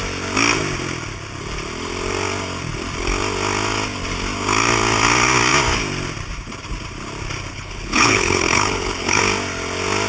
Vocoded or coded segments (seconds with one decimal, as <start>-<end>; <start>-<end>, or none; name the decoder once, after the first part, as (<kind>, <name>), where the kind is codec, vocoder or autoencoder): 7.5-9.2 (codec, HILCodec)